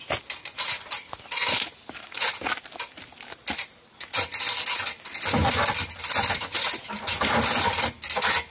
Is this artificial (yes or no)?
no